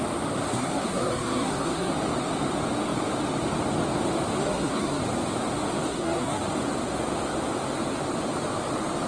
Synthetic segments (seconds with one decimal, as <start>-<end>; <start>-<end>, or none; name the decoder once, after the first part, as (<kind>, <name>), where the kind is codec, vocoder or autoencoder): 0.5-1.9 (codec, SNAC); 4.4-5.0; 5.9-6.4